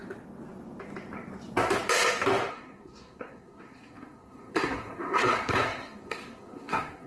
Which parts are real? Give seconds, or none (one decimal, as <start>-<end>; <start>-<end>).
0.0-2.5

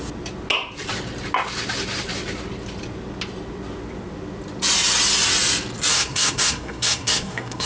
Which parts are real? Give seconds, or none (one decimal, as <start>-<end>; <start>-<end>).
0.0-5.9

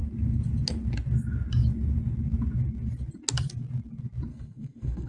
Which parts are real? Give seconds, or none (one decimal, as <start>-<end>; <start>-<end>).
0.0-4.3

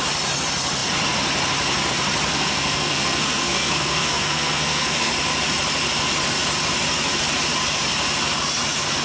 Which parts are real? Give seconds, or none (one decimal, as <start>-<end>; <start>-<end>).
0.0-2.3; 5.1-9.0

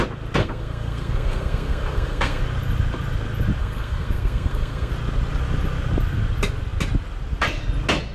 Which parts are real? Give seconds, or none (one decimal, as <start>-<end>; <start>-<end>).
0.0-0.4; 2.4-3.6; 4.9-8.1

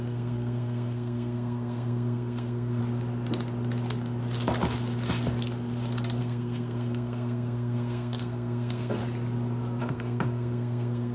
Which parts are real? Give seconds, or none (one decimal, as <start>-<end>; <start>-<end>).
2.8-6.2; 9.0-9.8